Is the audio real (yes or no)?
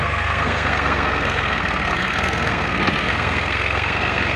no